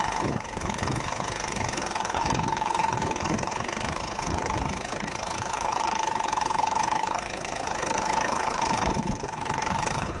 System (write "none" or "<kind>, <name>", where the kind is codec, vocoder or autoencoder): codec, HILCodec